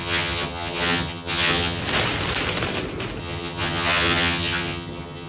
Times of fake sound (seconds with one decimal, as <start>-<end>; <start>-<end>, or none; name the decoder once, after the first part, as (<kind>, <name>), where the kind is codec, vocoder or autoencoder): 0.0-1.8 (vocoder, HiFi-GAN); 3.2-5.3